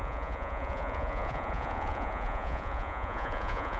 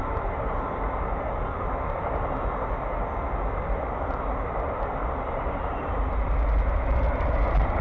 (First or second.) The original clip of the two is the second